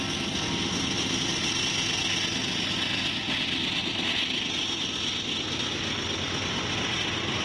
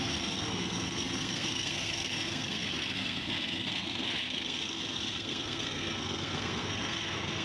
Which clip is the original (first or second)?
first